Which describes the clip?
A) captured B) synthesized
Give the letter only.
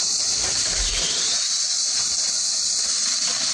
A